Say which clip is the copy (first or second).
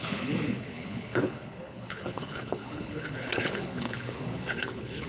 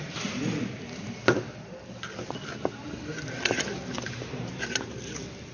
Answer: first